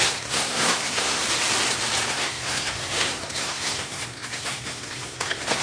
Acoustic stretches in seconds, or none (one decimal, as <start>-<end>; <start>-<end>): 1.2-2.1